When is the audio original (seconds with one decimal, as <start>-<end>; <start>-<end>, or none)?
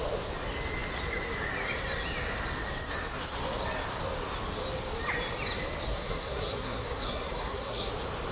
0.0-5.9; 7.9-8.3